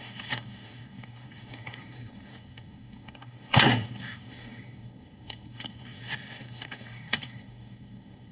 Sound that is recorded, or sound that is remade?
remade